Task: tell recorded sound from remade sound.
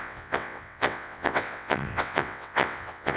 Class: remade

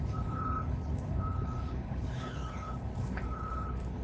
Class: remade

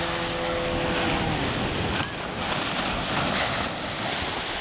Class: recorded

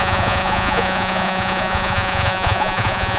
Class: remade